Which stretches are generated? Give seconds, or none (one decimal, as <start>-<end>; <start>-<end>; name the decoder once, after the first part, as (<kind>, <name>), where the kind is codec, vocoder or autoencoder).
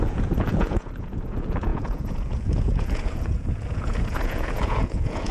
0.0-5.3 (vocoder, Vocos)